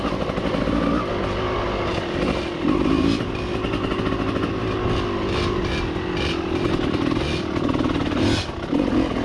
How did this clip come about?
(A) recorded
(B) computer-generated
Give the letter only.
A